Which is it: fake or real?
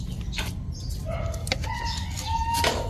real